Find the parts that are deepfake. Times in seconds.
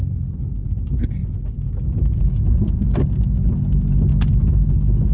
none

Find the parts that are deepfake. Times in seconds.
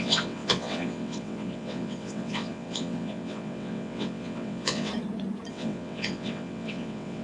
0.0-4.9 (vocoder, WaveNeXt); 5.5-7.2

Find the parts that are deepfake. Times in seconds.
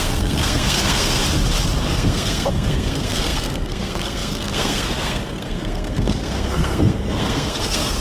0.0-1.2 (codec, SNAC); 1.9-8.0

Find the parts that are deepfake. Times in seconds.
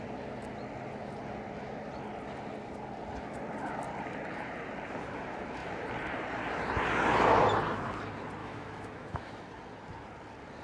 8.4-9.3 (autoencoder, DAC-VAE)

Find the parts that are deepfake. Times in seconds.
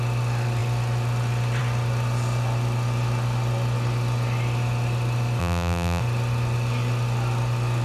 5.4-6.0 (vocoder, BigVGAN v2)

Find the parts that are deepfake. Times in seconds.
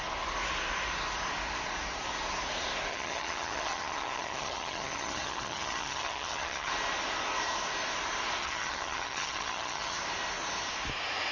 2.9-6.7 (vocoder, HiFi-GAN); 8.4-10.0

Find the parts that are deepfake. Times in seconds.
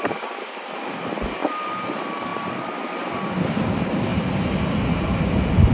1.4-1.9 (vocoder, BigVGAN v2)